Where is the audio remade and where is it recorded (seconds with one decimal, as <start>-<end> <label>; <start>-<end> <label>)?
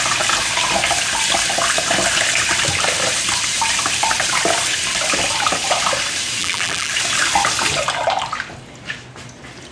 0.0-6.4 recorded; 6.4-6.9 remade; 6.9-9.7 recorded